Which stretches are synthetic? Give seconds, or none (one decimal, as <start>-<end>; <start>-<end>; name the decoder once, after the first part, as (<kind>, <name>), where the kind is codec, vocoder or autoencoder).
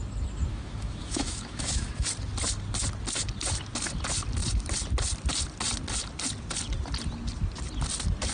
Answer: 0.5-2.1 (autoencoder, DAC-VAE)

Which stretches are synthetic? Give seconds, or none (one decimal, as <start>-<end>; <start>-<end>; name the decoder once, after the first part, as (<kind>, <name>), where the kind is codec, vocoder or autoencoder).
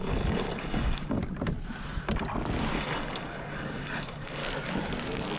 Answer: 0.0-1.2 (codec, DAC); 2.7-4.4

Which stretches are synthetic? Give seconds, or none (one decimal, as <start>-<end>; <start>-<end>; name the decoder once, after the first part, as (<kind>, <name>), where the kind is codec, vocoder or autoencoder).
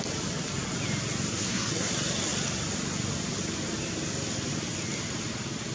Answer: 1.3-1.9 (codec, SNAC)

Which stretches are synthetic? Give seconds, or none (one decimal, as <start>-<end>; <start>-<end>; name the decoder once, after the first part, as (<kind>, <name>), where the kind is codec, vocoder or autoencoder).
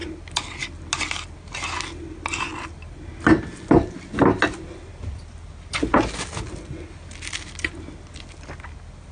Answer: none